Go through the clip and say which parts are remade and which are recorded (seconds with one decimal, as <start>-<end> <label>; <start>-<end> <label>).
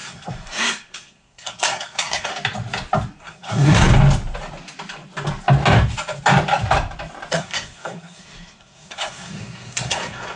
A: 0.0-2.3 remade; 2.3-3.2 recorded; 3.2-3.8 remade; 3.8-7.3 recorded; 7.3-10.4 remade